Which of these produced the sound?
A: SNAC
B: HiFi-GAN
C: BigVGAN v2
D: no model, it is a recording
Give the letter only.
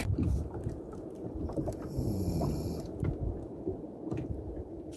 C